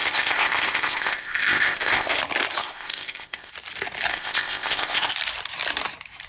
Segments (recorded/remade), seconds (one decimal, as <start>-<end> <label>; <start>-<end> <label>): 0.0-2.2 remade; 2.2-2.6 recorded; 2.6-3.5 remade; 3.5-4.1 recorded; 4.1-5.1 remade; 5.1-6.3 recorded